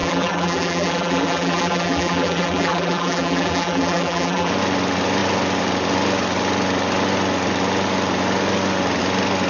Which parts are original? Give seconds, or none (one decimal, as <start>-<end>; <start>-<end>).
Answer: 4.5-9.5